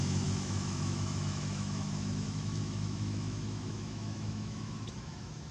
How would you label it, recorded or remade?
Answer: remade